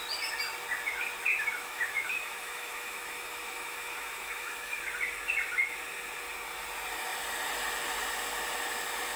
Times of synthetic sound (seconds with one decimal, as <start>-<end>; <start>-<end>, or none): 1.3-4.8

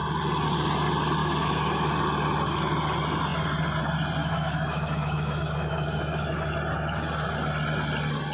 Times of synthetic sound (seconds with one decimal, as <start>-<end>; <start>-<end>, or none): 1.2-1.9; 4.2-6.5

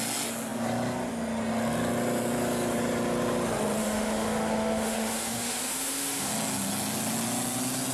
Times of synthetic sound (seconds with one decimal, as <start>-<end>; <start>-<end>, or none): 3.8-6.3

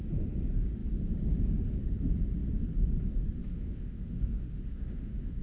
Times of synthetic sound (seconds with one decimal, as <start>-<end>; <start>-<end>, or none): 3.4-5.4

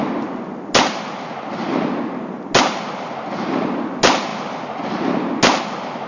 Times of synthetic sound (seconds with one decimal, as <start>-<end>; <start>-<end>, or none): none

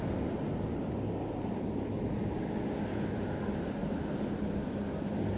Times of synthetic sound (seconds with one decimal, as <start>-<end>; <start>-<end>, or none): 2.9-3.5

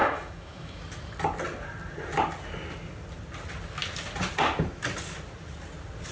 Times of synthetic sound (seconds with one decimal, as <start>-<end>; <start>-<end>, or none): 0.0-0.8